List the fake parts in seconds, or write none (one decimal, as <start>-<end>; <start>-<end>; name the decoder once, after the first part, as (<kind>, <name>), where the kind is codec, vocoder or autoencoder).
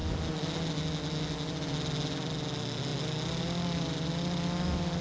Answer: none